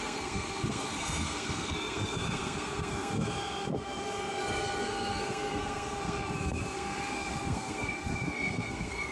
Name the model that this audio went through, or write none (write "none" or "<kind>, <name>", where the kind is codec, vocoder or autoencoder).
codec, SNAC